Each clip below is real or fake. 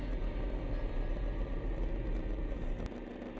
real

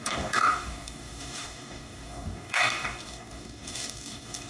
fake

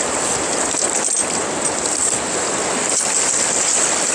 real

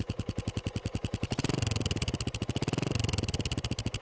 real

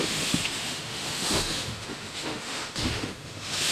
fake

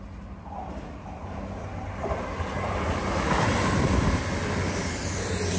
real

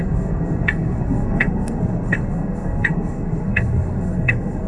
fake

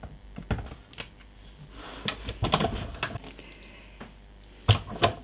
real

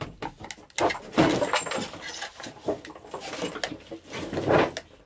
real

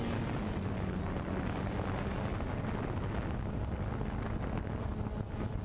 real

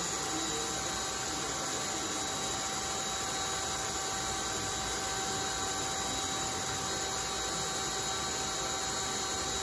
real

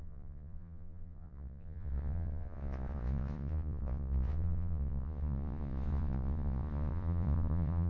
fake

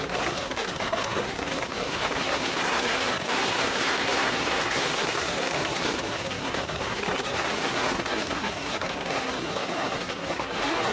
fake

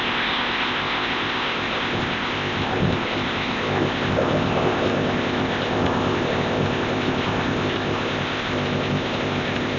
fake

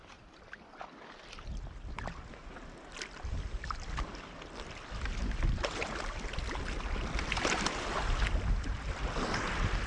real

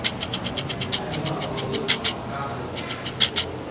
real